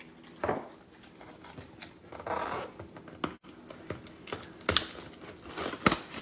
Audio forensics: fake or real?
real